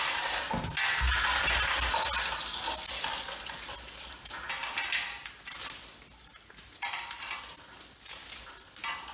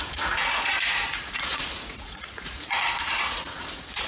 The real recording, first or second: first